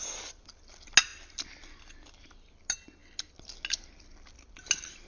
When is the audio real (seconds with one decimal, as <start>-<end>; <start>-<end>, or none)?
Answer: 0.0-5.1